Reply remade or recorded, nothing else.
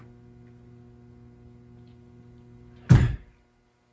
recorded